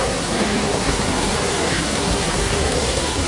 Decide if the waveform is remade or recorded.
remade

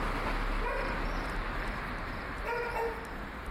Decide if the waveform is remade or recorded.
recorded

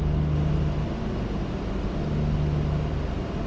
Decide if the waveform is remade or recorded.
recorded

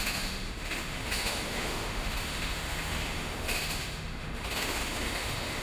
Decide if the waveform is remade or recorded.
remade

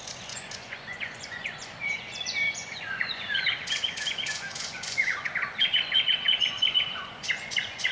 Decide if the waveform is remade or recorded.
remade